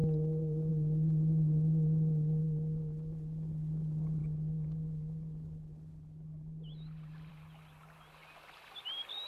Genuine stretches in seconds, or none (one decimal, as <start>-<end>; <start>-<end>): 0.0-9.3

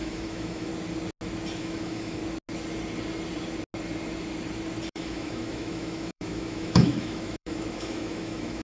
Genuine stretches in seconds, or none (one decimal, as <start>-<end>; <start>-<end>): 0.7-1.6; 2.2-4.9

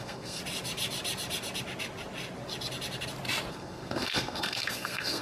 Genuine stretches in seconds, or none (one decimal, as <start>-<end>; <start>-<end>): 0.4-3.5